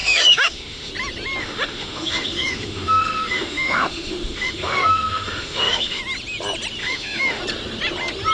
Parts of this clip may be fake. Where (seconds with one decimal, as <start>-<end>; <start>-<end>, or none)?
0.0-0.9; 1.4-6.0; 6.8-7.4

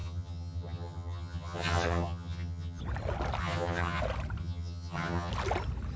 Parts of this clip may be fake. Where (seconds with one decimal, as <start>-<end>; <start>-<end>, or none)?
0.0-2.8; 3.4-4.0; 4.4-5.3

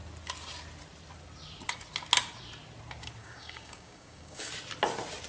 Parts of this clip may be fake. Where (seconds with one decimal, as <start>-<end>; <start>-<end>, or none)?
3.2-4.5

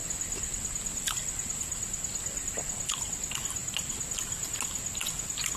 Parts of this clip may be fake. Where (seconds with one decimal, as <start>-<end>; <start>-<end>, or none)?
none

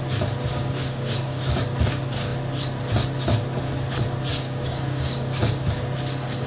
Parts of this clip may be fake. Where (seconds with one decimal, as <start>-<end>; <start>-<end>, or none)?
0.5-1.4; 4.3-5.8

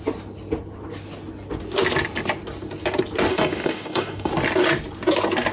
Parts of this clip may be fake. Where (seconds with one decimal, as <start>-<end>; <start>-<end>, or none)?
3.3-4.3

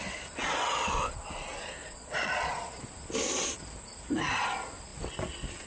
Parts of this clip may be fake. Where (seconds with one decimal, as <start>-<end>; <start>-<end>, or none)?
1.8-2.8

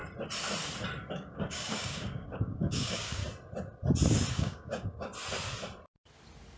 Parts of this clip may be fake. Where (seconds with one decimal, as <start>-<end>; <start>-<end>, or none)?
1.1-3.2; 4.3-5.1